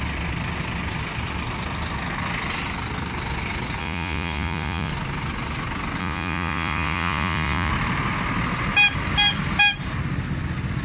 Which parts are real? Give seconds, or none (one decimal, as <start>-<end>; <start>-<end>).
0.0-3.8; 4.9-6.0; 7.7-10.8